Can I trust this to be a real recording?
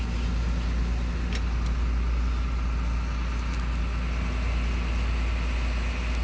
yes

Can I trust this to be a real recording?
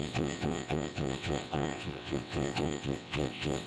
no